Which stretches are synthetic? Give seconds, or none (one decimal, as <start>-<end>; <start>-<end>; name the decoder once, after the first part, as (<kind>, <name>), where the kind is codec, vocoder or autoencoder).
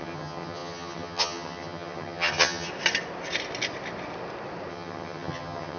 0.0-2.7 (vocoder, HiFi-GAN); 4.7-5.8